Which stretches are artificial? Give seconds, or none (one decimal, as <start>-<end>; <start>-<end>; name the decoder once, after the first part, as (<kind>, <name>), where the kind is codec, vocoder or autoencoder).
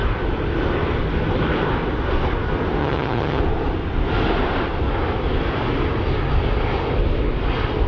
2.8-3.4 (vocoder, HiFi-GAN)